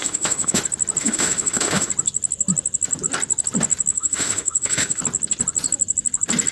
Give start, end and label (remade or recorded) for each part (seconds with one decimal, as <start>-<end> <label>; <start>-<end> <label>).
0.0-0.6 remade; 0.6-1.0 recorded; 1.0-1.9 remade; 1.9-3.9 recorded; 3.9-5.0 remade; 5.0-6.5 recorded